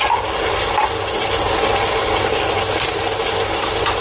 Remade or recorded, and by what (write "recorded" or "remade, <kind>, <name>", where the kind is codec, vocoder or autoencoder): recorded